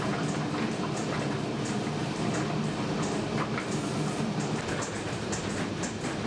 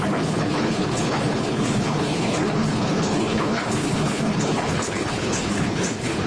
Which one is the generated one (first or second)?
second